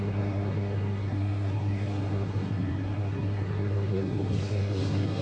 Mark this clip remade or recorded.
remade